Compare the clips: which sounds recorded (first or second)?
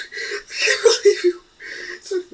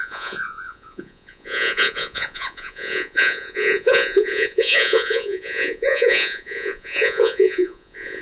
first